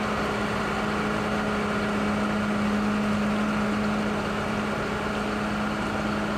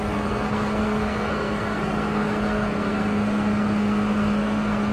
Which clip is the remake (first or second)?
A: second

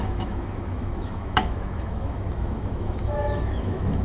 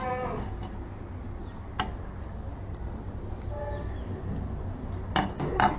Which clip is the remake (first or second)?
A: first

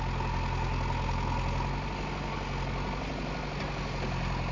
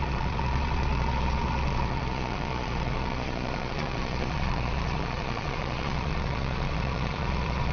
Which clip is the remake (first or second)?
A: second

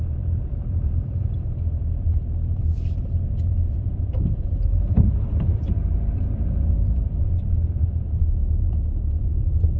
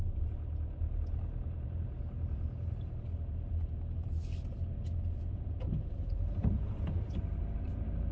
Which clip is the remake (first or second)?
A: first